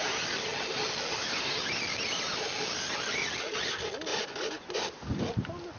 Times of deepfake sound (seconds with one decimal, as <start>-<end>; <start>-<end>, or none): 4.1-4.8